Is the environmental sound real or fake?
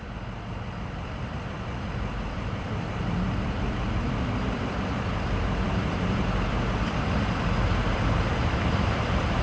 fake